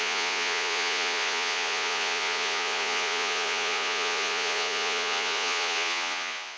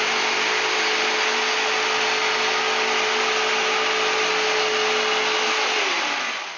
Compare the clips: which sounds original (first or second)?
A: second